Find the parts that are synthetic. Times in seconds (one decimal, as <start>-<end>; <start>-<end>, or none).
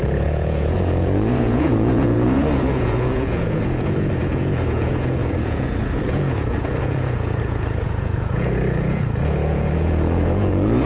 0.0-10.9